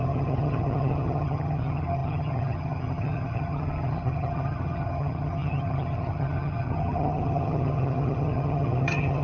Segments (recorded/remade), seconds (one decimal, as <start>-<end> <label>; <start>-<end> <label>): 0.0-9.2 remade